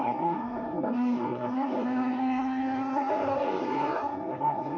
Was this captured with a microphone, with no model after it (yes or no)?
no